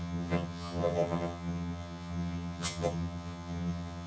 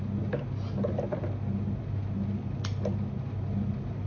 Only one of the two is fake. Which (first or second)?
first